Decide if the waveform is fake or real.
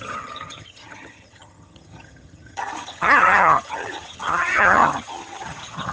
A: fake